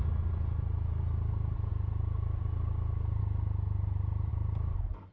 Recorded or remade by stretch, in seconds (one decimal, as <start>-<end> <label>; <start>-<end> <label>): 0.0-5.1 recorded